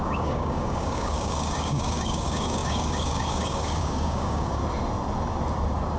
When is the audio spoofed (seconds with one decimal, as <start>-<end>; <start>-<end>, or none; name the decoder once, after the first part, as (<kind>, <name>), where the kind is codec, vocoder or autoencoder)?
0.0-4.6 (codec, DAC)